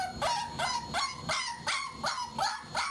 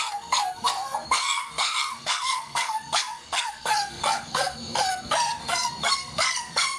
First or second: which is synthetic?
second